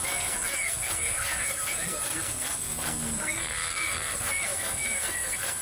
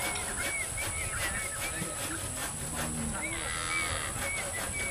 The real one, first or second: second